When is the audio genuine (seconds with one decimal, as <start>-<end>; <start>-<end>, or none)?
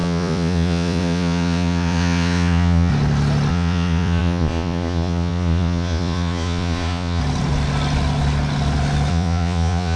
2.9-3.5; 7.2-9.1